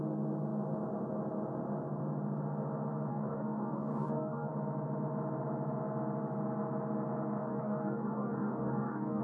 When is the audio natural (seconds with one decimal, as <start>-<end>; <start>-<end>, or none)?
0.0-3.1; 4.5-7.4